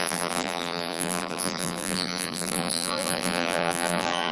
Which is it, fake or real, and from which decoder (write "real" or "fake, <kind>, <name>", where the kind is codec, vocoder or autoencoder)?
fake, vocoder, BigVGAN v2